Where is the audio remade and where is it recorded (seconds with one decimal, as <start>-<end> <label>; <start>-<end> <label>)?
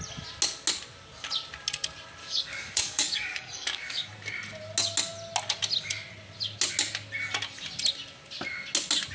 0.0-2.2 recorded; 2.2-4.1 remade; 4.1-9.1 recorded